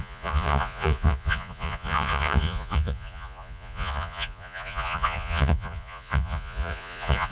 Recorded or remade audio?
remade